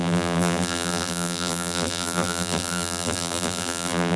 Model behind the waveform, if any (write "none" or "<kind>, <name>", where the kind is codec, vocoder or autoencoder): vocoder, BigVGAN v2